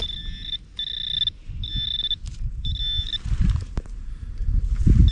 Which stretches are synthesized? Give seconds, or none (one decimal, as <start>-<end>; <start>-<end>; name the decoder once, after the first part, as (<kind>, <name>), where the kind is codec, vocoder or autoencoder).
none